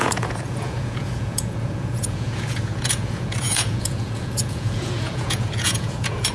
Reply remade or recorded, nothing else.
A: remade